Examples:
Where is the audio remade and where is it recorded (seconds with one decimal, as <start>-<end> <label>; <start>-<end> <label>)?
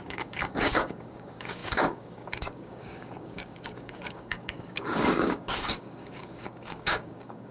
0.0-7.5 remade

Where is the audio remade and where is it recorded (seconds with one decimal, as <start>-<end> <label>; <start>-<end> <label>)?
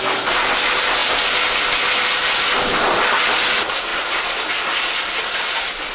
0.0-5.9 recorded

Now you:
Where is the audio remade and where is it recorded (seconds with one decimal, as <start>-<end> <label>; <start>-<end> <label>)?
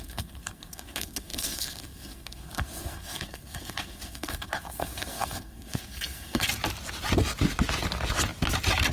0.0-6.5 remade; 6.5-8.9 recorded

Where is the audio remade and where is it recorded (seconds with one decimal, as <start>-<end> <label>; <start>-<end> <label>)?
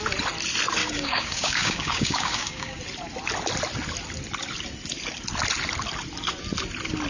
0.0-0.8 recorded; 0.8-2.8 remade; 2.8-7.1 recorded